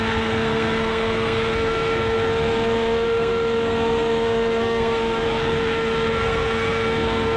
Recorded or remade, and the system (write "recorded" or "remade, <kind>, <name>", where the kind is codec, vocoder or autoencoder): remade, codec, SNAC